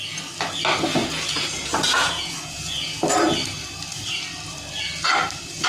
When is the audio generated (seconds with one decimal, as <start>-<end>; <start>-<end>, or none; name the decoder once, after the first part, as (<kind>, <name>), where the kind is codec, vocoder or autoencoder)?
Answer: 1.0-3.0 (vocoder, Vocos)